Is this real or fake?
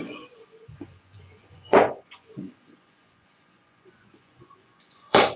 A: fake